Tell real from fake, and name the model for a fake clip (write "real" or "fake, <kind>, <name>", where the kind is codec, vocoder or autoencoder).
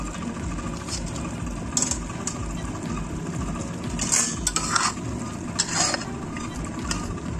real